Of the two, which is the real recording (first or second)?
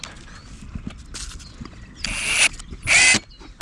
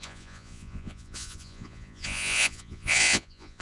first